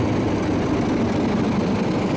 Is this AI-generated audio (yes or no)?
no